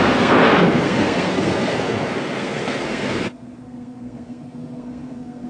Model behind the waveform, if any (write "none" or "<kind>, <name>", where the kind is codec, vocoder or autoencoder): codec, SNAC